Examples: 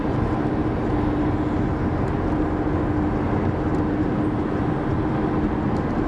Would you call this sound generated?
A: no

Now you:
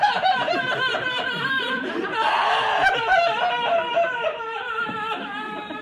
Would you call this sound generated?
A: yes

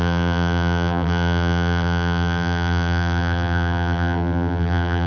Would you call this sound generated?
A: yes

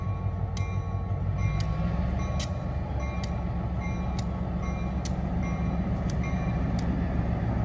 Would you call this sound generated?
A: no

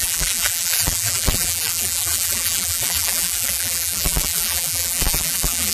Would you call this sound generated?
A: yes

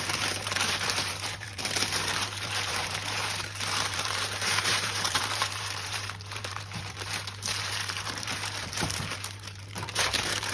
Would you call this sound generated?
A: yes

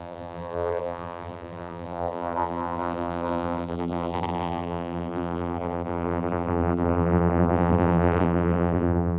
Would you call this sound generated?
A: yes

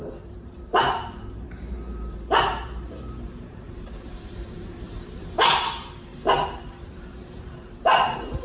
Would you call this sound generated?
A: yes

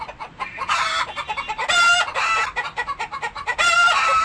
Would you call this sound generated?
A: yes